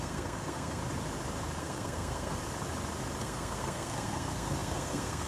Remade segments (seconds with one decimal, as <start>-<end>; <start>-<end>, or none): 0.0-0.8; 1.6-2.4; 3.2-5.3